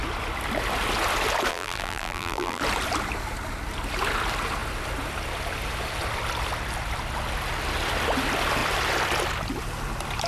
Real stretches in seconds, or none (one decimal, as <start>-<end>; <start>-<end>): 0.0-1.5; 2.6-10.3